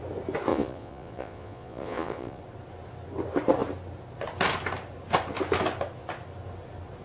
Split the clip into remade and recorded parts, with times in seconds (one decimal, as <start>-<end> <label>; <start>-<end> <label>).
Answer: 0.0-0.5 recorded; 0.5-2.4 remade; 2.4-7.0 recorded